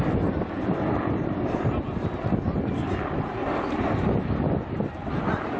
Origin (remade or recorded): recorded